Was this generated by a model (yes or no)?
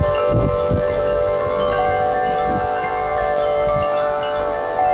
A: yes